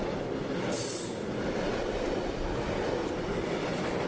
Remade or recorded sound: recorded